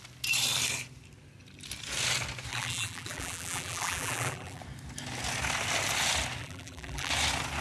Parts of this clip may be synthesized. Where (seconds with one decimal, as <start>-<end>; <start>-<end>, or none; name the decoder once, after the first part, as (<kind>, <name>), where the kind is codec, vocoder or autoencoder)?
2.5-4.6 (vocoder, BigVGAN v2); 6.4-7.1